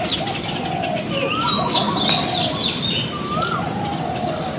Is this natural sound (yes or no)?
yes